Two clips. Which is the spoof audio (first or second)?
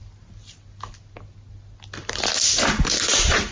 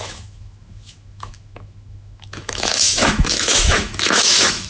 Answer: second